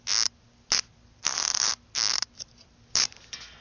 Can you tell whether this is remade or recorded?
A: recorded